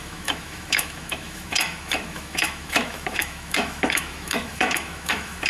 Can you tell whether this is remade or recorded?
remade